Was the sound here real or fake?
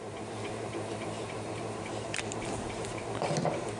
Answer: fake